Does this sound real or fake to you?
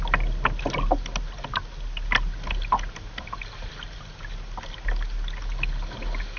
real